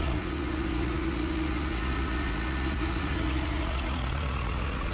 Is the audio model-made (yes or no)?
yes